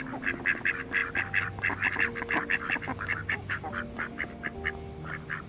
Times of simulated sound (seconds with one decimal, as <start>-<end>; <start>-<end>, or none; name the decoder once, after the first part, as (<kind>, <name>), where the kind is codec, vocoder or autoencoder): 2.9-3.7 (codec, DAC)